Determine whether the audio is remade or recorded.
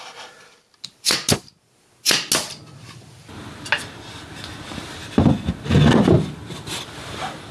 recorded